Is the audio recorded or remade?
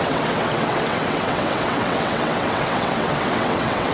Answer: remade